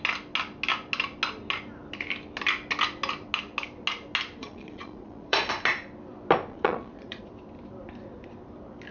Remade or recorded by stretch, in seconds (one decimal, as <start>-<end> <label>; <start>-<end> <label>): 0.0-4.4 recorded; 4.4-5.5 remade; 5.5-6.5 recorded; 6.5-7.2 remade; 7.2-8.9 recorded